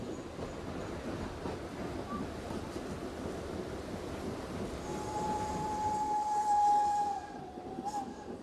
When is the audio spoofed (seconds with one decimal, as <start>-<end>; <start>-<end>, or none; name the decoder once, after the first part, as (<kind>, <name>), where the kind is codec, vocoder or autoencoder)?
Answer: 7.1-7.7 (vocoder, BigVGAN v2)

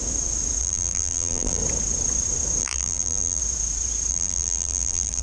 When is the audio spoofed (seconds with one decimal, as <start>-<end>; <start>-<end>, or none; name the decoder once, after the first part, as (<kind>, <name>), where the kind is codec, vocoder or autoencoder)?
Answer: 0.6-1.6 (vocoder, BigVGAN v2); 2.6-3.4; 4.1-5.2

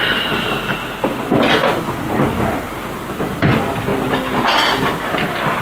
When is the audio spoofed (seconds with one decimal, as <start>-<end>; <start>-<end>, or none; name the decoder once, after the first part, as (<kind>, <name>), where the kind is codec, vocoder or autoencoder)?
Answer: none